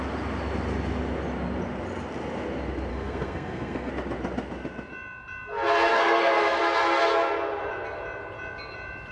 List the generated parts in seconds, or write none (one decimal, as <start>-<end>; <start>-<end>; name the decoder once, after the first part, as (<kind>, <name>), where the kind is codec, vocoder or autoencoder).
2.9-3.9 (codec, SNAC); 5.9-6.6